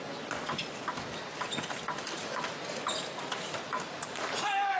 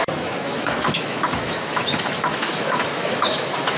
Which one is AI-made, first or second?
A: second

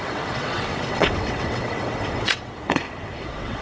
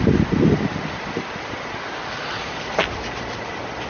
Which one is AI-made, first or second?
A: first